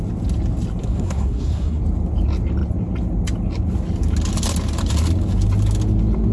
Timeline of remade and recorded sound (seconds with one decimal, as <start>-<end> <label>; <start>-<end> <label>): 0.0-0.8 recorded; 0.8-1.8 remade; 1.8-6.3 recorded